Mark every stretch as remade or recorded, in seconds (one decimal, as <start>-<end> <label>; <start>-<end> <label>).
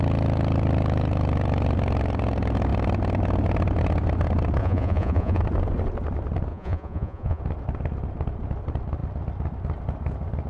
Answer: 0.0-4.6 recorded; 4.6-5.4 remade; 5.4-6.5 recorded; 6.5-7.4 remade; 7.4-10.5 recorded